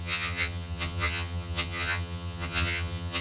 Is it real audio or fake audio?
fake